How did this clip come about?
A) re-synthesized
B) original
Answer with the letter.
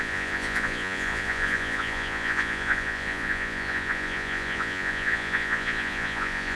A